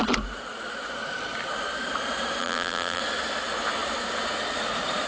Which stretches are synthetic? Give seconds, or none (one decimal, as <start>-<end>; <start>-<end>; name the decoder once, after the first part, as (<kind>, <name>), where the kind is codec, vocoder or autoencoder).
2.4-3.0 (vocoder, BigVGAN v2)